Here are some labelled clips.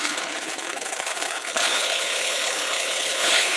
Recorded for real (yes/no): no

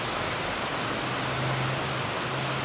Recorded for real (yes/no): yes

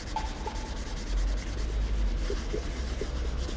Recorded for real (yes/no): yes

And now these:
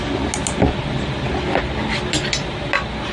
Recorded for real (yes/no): yes